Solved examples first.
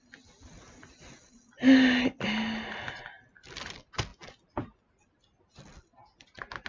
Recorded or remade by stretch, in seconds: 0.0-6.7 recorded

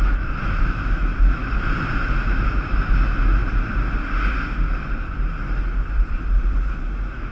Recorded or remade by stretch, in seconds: 0.0-1.4 remade; 1.4-2.0 recorded; 2.0-3.4 remade; 3.4-6.8 recorded; 6.8-7.3 remade